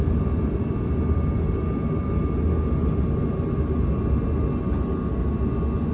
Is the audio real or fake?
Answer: real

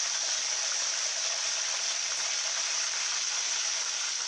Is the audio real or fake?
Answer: real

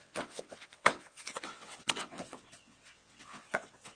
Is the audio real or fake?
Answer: fake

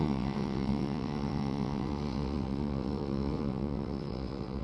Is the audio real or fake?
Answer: fake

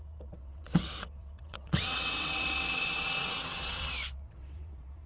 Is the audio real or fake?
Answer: fake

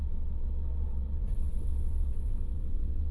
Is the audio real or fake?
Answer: fake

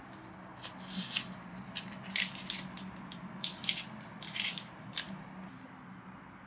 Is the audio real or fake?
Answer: real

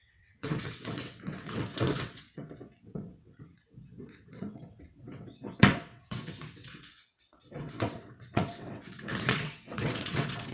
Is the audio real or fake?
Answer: fake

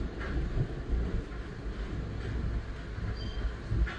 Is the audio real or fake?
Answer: real